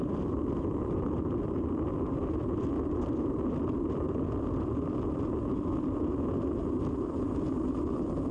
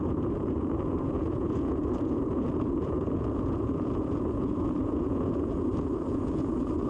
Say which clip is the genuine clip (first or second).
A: first